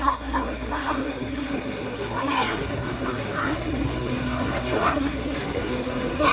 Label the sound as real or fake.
fake